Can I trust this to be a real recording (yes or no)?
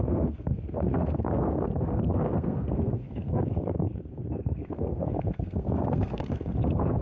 no